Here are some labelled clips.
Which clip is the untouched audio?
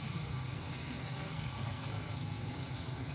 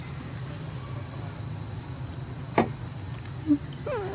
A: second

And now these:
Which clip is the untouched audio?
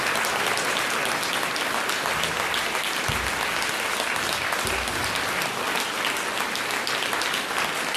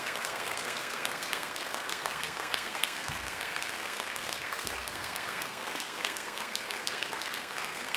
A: first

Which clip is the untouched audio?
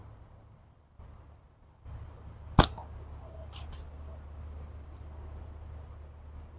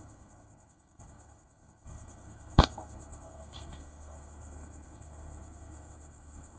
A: first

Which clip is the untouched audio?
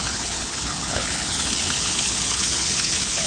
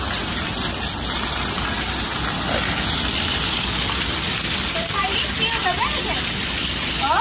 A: second